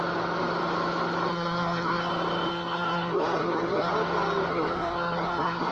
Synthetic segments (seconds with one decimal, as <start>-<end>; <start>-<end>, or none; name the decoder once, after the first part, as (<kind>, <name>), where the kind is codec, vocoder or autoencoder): 1.3-2.1 (codec, SNAC); 2.5-3.9; 4.5-5.7